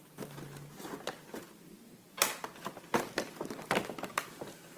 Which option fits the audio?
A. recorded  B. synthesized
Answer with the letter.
A